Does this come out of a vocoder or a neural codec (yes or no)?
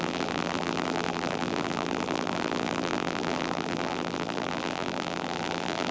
yes